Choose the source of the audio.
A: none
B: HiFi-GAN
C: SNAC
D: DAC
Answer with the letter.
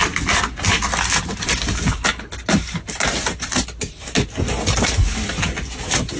A